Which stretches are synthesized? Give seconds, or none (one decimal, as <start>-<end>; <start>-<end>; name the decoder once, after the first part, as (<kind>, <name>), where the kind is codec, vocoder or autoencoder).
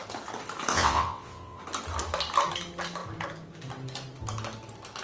0.7-1.6 (vocoder, WaveNeXt)